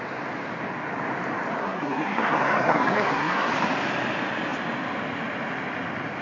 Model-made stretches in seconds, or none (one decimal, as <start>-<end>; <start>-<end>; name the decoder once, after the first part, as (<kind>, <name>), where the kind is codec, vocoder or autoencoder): 1.6-3.5 (codec, SNAC)